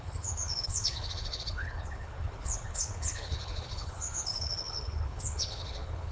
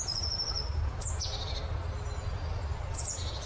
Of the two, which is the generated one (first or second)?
first